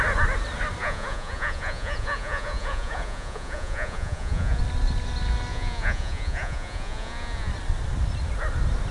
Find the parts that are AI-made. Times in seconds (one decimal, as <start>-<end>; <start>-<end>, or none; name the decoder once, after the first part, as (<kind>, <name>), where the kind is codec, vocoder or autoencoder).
0.8-4.6 (vocoder, Vocos); 5.5-7.5